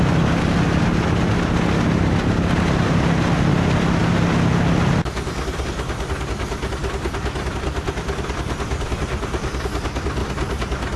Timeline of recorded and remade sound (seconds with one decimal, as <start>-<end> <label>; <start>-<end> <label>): 0.0-11.0 recorded

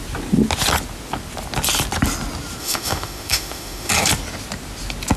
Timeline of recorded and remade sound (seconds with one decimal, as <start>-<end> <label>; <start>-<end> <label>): 0.0-2.6 recorded; 2.6-3.9 remade; 3.9-5.2 recorded

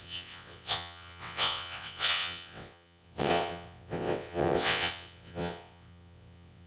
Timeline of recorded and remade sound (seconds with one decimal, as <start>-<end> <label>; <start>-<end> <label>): 0.0-6.7 remade

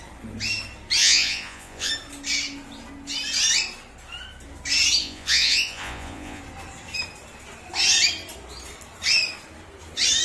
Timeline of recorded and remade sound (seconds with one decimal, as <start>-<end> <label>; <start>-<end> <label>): 0.0-1.0 recorded; 1.0-1.9 remade; 1.9-5.0 recorded; 5.0-6.4 remade; 6.4-10.2 recorded

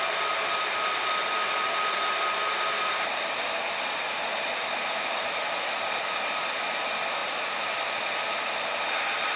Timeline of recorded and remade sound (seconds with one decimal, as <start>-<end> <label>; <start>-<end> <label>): 0.0-9.4 recorded

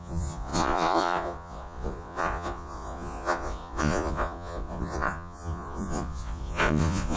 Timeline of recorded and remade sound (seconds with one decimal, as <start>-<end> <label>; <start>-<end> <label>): 0.0-7.2 remade

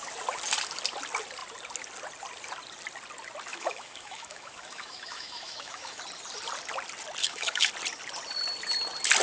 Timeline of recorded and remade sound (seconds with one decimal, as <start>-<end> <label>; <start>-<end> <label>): 0.0-3.5 recorded; 3.5-6.0 remade; 6.0-7.2 recorded; 7.2-7.7 remade; 7.7-9.2 recorded